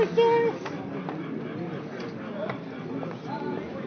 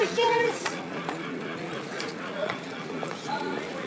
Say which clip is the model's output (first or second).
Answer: second